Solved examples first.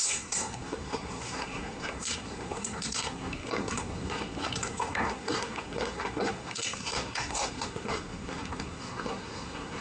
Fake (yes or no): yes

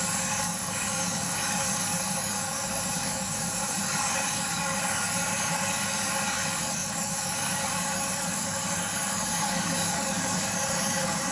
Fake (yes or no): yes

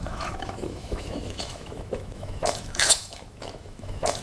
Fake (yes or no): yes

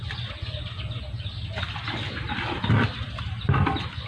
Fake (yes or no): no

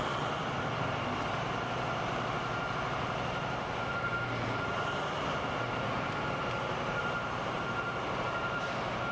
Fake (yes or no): yes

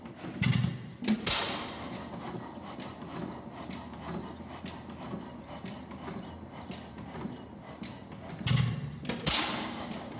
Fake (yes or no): no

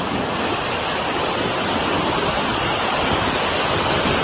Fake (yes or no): no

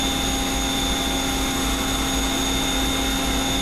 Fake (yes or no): no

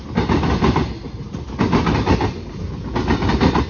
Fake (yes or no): no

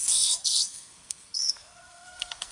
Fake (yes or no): yes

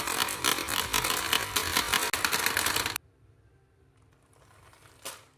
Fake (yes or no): no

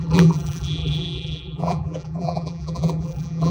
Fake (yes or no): yes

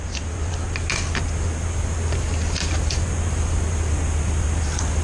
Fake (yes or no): no